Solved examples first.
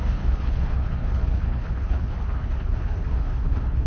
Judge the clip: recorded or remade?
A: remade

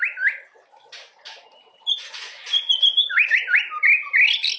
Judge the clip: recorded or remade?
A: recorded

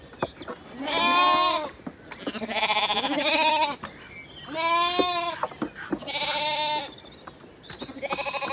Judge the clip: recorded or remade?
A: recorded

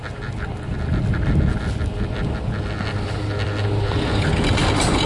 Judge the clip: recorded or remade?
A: recorded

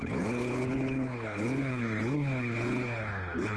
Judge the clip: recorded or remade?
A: remade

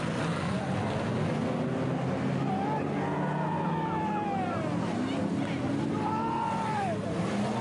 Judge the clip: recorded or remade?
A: recorded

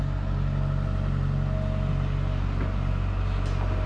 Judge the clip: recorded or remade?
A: recorded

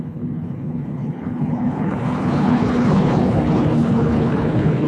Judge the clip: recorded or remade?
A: remade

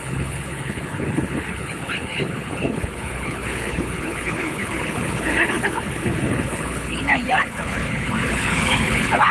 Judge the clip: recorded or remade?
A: remade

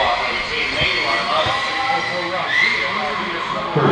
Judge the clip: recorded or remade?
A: recorded